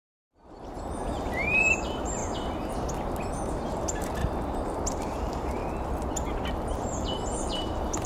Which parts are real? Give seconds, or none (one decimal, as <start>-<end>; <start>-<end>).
2.2-3.3; 4.2-5.0; 5.6-6.5